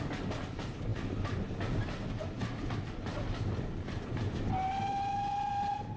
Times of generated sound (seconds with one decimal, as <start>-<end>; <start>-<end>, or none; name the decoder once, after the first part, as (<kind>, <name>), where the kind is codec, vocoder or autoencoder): none

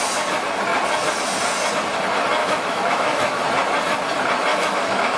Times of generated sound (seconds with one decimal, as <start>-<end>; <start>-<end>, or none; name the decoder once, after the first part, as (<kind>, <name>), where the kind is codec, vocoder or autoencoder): 2.4-3.4 (autoencoder, DAC-VAE); 4.5-5.2

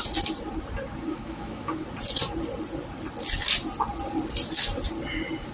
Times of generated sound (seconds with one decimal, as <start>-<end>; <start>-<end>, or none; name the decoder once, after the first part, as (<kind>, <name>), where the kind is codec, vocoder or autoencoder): 1.1-1.7 (autoencoder, DAC-VAE)

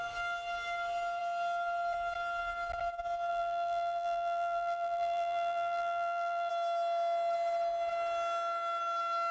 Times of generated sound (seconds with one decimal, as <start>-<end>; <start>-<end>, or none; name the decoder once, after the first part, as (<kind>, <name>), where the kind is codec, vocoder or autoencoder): 3.3-6.5 (vocoder, BigVGAN v2)

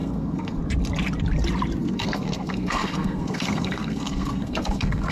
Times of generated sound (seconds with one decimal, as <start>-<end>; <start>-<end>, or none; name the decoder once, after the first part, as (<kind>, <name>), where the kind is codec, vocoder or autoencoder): 0.0-0.6 (codec, SNAC); 1.8-5.1

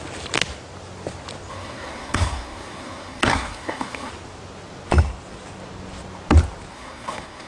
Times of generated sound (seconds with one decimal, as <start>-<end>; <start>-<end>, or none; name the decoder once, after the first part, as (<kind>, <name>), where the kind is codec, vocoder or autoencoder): 1.5-4.1 (codec, SNAC); 6.7-7.5